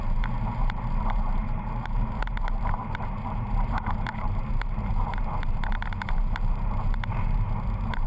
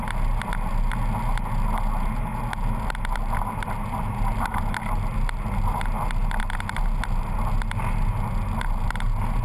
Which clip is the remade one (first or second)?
first